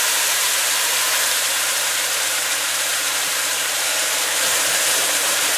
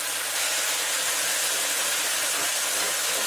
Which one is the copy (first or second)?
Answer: first